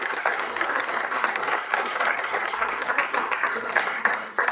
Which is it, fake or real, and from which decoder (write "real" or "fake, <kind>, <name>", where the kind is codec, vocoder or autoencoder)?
fake, codec, SNAC